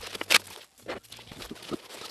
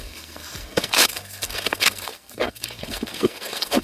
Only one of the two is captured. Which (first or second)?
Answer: first